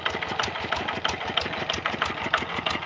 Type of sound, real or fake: real